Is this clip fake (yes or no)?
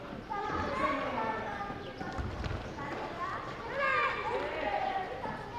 no